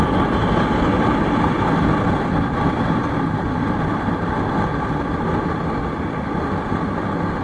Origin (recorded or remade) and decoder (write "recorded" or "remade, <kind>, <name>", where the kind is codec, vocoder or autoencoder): recorded